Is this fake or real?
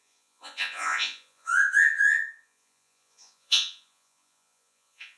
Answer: fake